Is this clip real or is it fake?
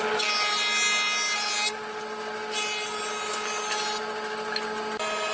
real